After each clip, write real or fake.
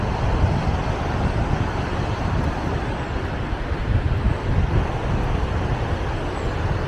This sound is real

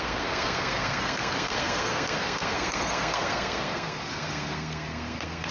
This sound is fake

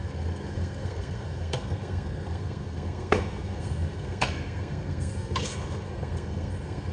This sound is fake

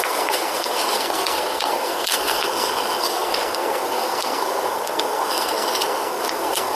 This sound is fake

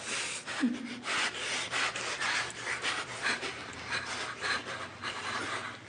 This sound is real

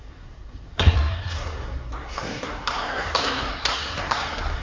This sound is fake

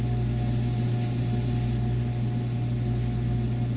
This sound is real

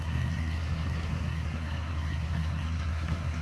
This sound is fake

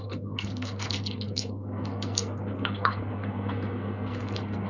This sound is fake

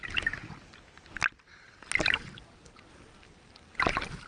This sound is real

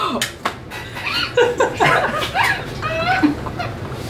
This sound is real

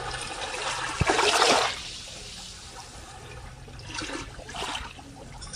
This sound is real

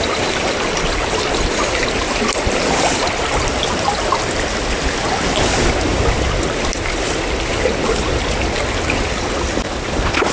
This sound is real